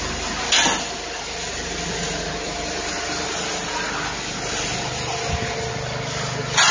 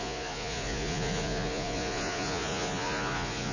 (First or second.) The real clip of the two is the first